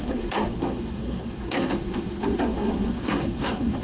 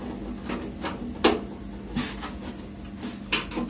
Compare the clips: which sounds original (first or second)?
second